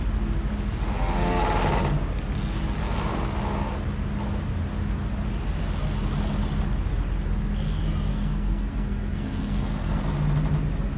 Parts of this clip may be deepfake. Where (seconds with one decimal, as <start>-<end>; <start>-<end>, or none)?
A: 8.1-10.0

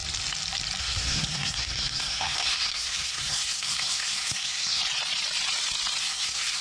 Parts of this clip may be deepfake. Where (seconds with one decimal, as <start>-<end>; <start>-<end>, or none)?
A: 0.8-4.8; 6.0-6.6

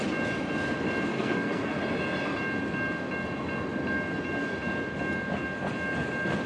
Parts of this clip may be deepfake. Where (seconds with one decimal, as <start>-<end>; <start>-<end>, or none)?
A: 1.1-1.8